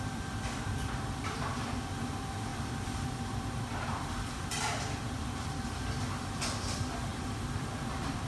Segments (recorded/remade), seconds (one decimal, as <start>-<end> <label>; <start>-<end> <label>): 0.0-8.3 remade